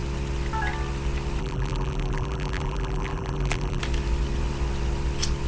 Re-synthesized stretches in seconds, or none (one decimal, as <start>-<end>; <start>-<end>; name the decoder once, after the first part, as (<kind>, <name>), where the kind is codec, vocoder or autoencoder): 1.4-3.8 (vocoder, BigVGAN v2)